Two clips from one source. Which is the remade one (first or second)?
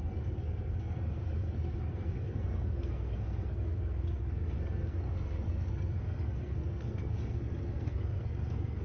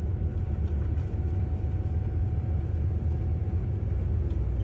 first